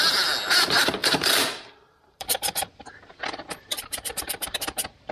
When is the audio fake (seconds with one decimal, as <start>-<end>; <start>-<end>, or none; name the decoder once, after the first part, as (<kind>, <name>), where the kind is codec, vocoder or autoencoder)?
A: 1.0-2.7 (vocoder, BigVGAN v2); 3.7-4.5